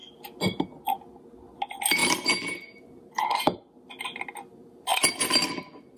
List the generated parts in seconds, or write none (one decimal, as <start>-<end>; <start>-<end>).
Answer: 4.9-5.5